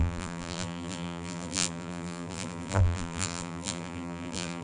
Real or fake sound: fake